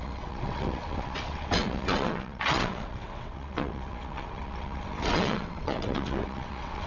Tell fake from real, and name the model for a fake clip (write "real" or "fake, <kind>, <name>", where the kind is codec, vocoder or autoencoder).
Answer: fake, vocoder, WaveNeXt